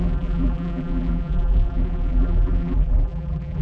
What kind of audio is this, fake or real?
fake